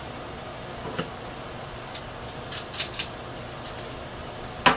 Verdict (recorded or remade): recorded